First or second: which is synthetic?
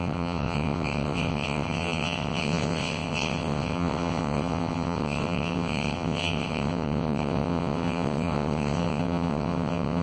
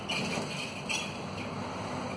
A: first